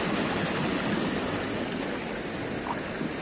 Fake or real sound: real